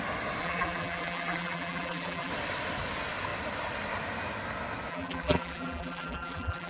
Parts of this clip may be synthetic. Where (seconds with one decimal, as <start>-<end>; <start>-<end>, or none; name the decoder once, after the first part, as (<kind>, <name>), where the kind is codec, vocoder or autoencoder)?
0.4-2.3 (vocoder, BigVGAN v2); 4.9-6.7